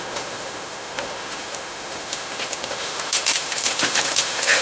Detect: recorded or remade remade